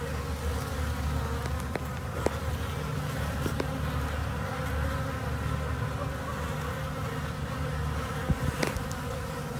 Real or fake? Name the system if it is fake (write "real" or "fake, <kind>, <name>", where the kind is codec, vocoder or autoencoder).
real